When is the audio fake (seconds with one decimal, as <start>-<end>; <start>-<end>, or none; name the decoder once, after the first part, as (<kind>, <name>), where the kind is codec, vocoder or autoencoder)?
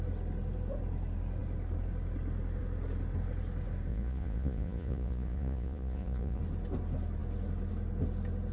3.9-6.4 (vocoder, Vocos)